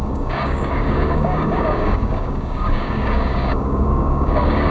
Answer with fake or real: fake